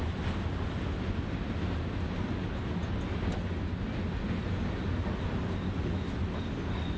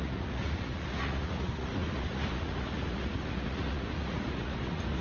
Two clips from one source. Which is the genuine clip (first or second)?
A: first